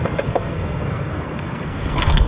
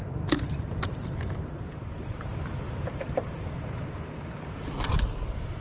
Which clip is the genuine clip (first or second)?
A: second